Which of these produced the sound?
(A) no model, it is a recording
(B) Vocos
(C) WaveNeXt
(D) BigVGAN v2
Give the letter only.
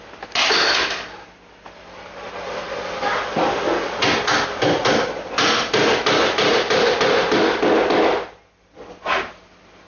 A